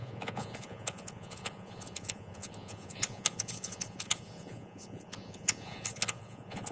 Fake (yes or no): yes